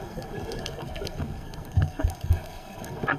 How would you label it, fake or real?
fake